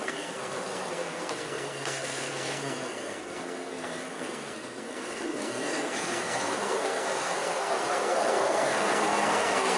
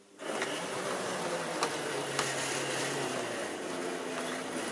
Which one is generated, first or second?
first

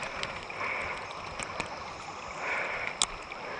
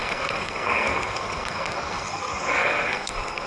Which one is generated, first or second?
second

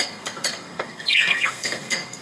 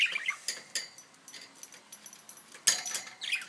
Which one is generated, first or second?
first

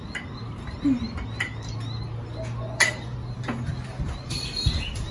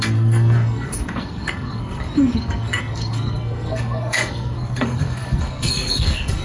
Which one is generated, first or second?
second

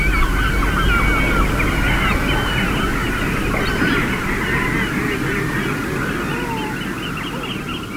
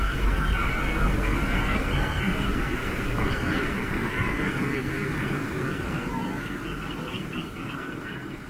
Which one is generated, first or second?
second